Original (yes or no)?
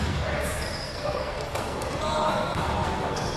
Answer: no